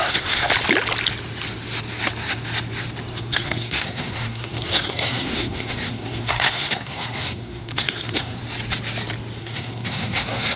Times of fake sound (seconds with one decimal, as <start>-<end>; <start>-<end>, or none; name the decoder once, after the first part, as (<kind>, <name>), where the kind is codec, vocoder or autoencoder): 0.0-0.5 (codec, SNAC); 3.2-8.4; 9.4-10.6